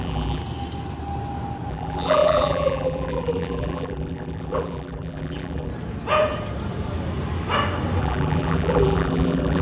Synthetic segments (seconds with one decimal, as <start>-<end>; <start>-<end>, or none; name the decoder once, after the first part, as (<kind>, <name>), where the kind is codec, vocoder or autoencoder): 0.0-0.4 (vocoder, BigVGAN v2); 1.7-5.7; 8.0-9.6